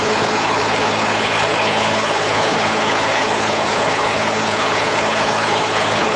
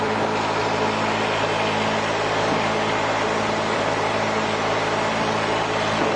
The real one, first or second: second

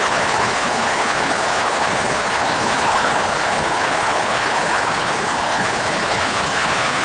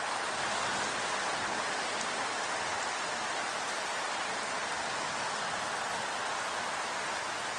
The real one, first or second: second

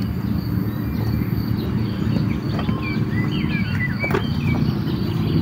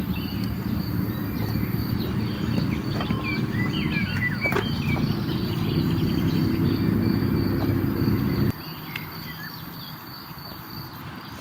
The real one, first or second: first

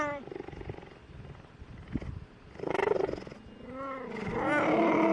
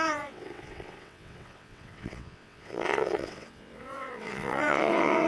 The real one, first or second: first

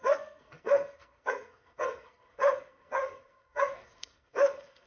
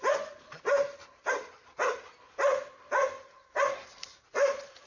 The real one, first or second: second